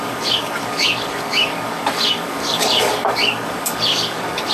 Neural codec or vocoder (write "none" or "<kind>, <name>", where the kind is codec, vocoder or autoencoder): codec, DAC